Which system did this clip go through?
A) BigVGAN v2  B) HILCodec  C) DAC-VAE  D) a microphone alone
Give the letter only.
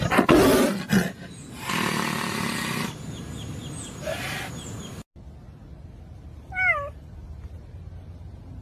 D